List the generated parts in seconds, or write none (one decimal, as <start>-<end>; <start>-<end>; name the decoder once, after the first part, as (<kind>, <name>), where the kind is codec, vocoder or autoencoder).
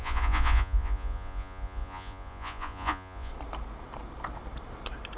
0.0-3.3 (vocoder, Vocos)